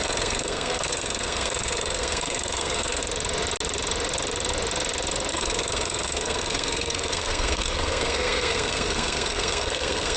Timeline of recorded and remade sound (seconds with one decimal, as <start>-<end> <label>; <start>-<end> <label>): 0.0-3.0 remade; 3.0-5.3 recorded; 5.3-10.2 remade